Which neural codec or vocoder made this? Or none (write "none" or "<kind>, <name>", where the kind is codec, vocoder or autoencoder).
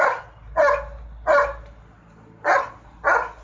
none